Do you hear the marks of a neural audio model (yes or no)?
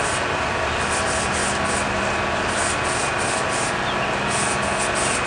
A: no